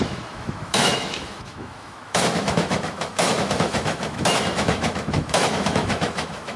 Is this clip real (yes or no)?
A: no